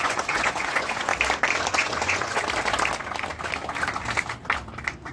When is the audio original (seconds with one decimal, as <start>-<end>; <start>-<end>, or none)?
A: 1.1-1.7; 2.4-5.1